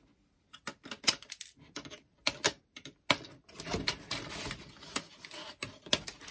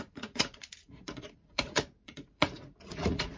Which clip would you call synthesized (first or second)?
second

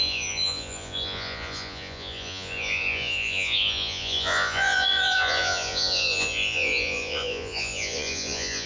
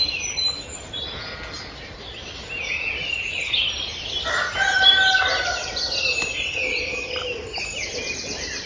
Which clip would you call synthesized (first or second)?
first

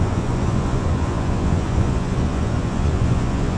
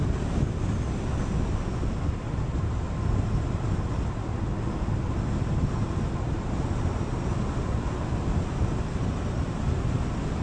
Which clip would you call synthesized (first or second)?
first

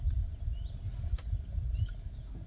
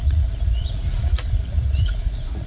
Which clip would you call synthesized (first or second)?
second